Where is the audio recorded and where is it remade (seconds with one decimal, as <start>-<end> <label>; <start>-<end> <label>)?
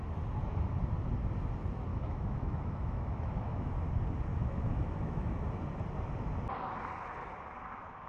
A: 0.0-1.9 recorded; 1.9-3.8 remade; 3.8-4.3 recorded; 4.3-5.5 remade; 5.5-8.1 recorded